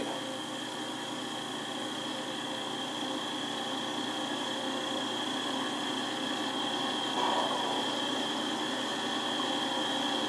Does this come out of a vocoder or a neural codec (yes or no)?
no